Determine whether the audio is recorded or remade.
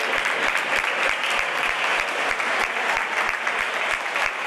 recorded